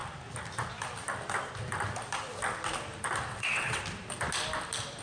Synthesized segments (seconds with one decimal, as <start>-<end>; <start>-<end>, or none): 3.3-3.8